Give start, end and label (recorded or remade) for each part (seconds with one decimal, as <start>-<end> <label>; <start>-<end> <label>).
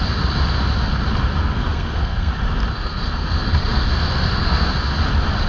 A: 0.0-1.4 recorded; 1.4-2.3 remade; 2.3-2.7 recorded; 2.7-4.7 remade; 4.7-5.5 recorded